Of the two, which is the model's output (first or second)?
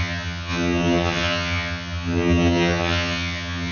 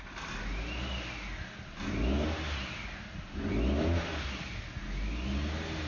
first